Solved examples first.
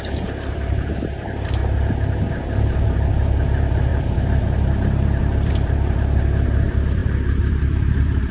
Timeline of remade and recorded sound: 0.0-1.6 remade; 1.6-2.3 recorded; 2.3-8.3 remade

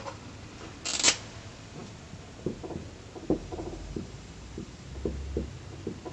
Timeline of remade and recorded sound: 0.0-3.4 recorded; 3.4-4.9 remade; 4.9-6.1 recorded

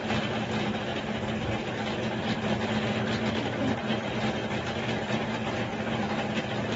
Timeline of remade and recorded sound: 0.0-6.8 recorded

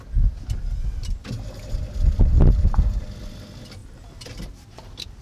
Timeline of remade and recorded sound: 0.0-3.8 recorded; 3.8-4.7 remade; 4.7-5.2 recorded

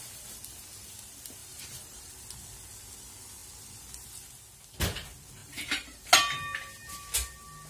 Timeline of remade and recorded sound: 0.0-1.4 recorded; 1.4-2.1 remade; 2.1-5.4 recorded; 5.4-6.1 remade; 6.1-7.7 recorded

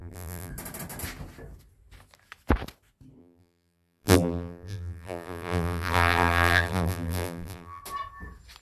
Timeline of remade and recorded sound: 0.0-0.5 remade; 0.5-3.2 recorded; 3.2-7.8 remade; 7.8-8.6 recorded

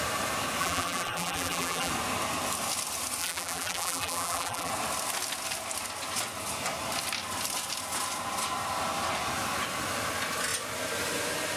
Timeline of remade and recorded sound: 0.0-0.6 recorded; 0.6-1.9 remade; 1.9-3.2 recorded; 3.2-4.7 remade; 4.7-11.6 recorded

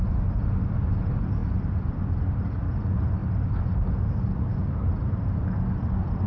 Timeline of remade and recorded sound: 0.0-1.4 recorded; 1.4-2.1 remade; 2.1-4.6 recorded; 4.6-5.2 remade; 5.2-6.3 recorded